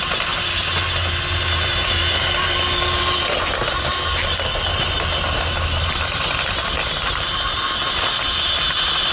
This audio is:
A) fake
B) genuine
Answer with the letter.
B